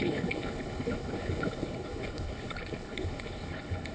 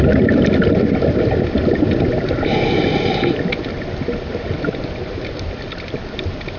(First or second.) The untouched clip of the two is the second